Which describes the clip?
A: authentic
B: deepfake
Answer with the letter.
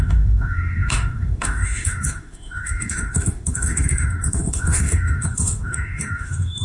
B